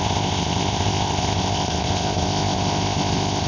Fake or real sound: fake